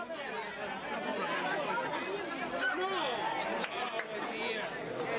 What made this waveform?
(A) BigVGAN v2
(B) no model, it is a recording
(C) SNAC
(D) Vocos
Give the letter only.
B